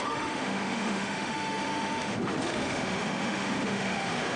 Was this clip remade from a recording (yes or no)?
yes